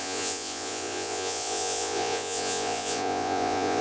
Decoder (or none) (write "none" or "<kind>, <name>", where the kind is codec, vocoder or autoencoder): vocoder, Vocos